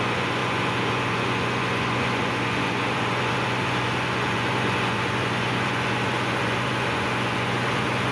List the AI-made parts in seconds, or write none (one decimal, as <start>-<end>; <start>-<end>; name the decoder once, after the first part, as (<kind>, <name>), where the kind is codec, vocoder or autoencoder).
0.0-8.1 (vocoder, Vocos)